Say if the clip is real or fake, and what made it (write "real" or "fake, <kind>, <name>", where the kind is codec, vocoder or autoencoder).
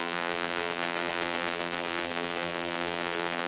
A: fake, vocoder, BigVGAN v2